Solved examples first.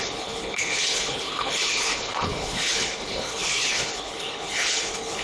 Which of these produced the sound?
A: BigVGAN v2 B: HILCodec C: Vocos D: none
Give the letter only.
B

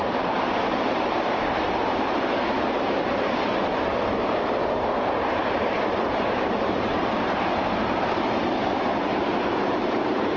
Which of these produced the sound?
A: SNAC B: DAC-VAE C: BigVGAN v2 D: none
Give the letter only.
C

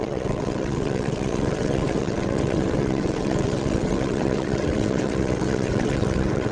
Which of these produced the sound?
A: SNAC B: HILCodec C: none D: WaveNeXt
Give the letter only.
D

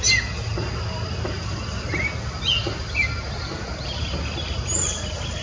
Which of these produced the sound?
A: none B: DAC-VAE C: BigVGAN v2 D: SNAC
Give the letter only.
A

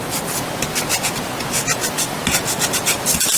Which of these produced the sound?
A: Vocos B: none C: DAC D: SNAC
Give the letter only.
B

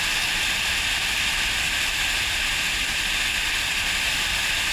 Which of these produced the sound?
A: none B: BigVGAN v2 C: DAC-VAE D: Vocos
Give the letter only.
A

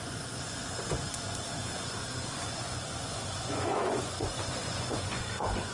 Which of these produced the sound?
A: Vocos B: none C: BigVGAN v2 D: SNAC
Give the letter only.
A